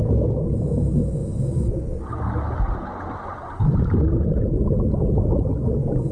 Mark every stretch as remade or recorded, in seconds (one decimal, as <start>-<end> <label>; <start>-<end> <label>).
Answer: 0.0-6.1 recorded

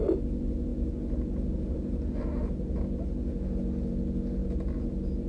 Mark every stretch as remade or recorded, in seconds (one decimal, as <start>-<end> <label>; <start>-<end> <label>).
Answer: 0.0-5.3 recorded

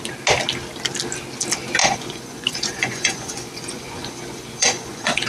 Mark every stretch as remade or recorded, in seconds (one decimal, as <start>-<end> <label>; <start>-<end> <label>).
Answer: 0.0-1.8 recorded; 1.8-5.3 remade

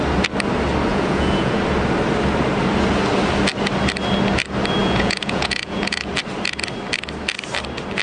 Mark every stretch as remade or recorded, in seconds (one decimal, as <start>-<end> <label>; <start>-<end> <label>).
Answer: 0.0-0.9 recorded; 0.9-1.6 remade; 1.6-4.8 recorded; 4.8-6.1 remade; 6.1-8.0 recorded

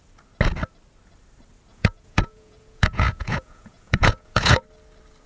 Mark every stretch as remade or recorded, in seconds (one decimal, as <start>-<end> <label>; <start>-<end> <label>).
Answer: 0.0-1.7 recorded; 1.7-4.6 remade; 4.6-5.3 recorded

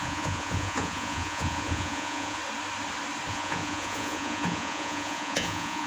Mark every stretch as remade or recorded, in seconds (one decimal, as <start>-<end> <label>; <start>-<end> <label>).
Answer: 0.0-2.4 remade; 2.4-3.3 recorded; 3.3-5.9 remade

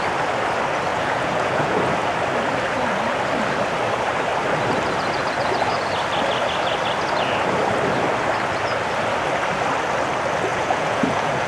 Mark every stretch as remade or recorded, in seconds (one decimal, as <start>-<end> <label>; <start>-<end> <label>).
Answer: 0.0-0.9 recorded; 0.9-1.8 remade; 1.8-10.5 recorded; 10.5-11.5 remade